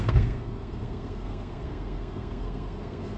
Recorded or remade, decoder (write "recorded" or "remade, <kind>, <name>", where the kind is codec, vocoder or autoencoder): remade, codec, SNAC